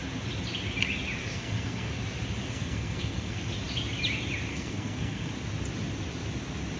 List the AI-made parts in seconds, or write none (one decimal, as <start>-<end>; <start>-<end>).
1.2-2.0; 2.4-3.5; 4.5-5.3